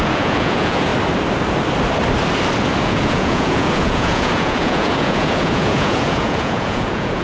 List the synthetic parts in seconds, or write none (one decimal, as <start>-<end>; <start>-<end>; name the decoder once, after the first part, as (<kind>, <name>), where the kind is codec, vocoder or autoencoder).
0.0-0.9 (vocoder, Vocos); 2.8-7.2

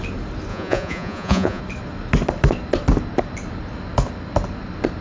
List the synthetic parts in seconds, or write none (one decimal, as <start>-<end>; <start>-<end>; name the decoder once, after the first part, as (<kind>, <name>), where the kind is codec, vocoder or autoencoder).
0.5-1.6 (vocoder, Vocos)